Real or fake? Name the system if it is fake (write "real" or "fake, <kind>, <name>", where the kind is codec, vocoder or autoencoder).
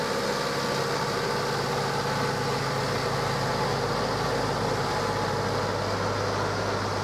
real